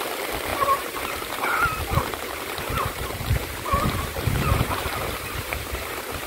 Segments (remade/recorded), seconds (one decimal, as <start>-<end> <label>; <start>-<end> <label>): 0.0-0.5 recorded; 0.5-1.6 remade; 1.6-2.1 recorded; 2.1-6.3 remade